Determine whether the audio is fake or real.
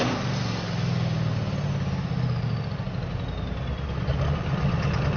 real